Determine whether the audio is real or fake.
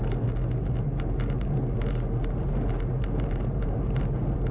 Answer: real